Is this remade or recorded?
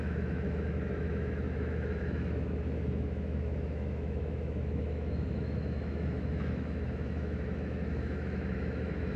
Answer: remade